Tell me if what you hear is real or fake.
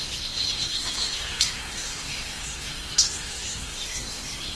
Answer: fake